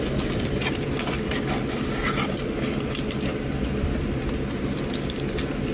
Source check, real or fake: real